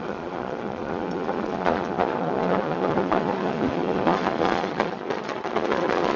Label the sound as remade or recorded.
remade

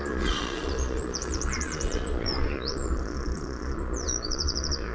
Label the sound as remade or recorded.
remade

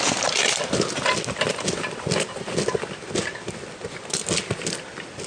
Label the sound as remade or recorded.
recorded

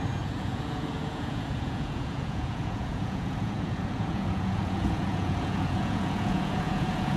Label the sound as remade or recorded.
remade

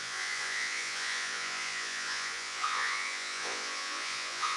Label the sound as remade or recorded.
remade